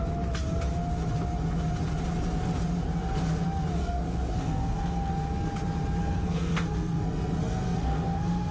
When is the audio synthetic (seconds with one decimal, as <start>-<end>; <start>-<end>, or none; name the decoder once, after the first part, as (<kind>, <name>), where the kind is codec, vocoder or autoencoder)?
3.8-5.1 (codec, SNAC); 6.0-8.5